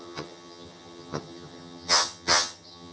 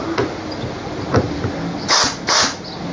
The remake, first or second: first